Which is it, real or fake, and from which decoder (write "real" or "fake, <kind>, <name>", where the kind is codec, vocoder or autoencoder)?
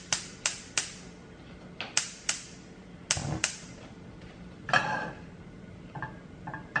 real